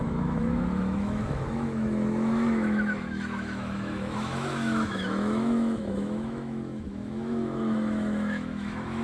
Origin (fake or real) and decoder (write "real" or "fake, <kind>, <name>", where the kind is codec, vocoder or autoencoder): fake, autoencoder, DAC-VAE